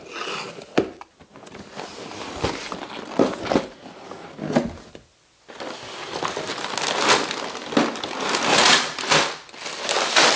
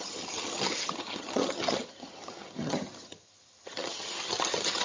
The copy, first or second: second